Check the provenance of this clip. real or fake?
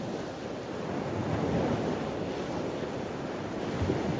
real